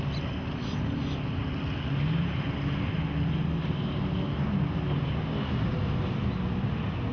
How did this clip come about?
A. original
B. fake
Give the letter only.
A